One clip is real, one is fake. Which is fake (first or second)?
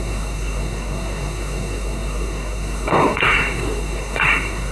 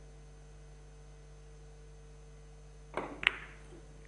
first